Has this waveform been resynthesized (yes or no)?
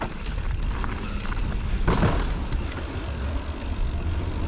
no